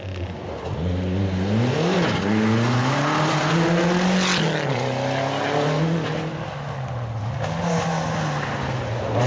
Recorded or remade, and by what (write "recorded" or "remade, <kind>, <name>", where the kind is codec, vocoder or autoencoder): recorded